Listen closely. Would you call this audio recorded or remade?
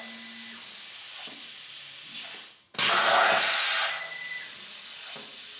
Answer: recorded